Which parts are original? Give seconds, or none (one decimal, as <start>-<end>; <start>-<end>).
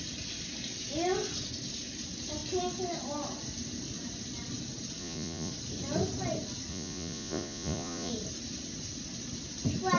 0.0-5.0; 5.5-6.7; 8.1-10.0